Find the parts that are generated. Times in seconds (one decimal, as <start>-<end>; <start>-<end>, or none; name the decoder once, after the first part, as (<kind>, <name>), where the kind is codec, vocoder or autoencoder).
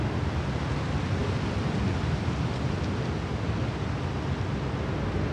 none